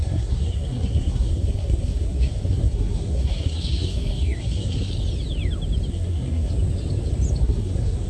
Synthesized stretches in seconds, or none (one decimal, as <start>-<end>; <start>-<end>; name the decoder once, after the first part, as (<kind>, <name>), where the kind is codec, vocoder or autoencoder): 0.0-4.9 (codec, SNAC); 5.9-6.5; 7.4-8.1